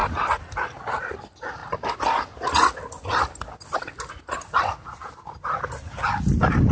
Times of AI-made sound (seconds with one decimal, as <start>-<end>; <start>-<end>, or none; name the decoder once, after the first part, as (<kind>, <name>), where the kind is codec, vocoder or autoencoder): none